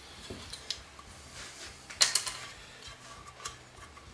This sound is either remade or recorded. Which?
recorded